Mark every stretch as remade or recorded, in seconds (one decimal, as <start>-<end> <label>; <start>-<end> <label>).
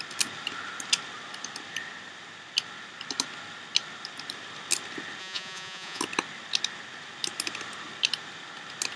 0.0-5.2 recorded; 5.2-6.0 remade; 6.0-9.0 recorded